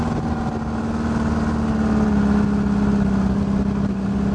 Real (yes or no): yes